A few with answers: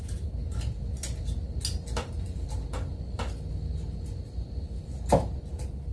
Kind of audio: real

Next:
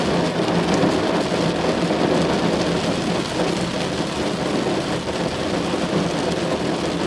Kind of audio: real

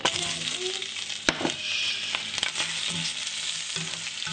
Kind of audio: real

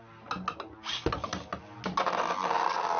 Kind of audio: real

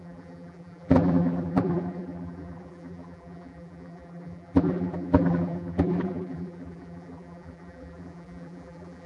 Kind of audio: fake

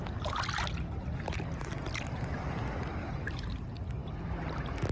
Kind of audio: real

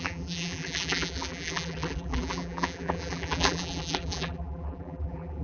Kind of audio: fake